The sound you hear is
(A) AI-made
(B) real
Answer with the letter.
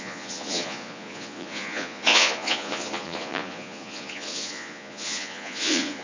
A